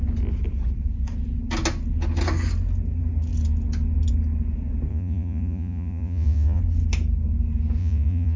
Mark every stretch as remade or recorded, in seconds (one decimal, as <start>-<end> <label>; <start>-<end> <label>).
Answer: 0.0-4.9 recorded; 4.9-6.6 remade; 6.6-7.8 recorded; 7.8-8.4 remade